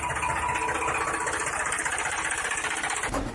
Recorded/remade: recorded